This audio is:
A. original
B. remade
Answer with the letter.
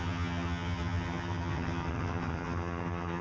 B